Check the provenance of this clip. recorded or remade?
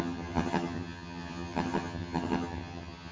remade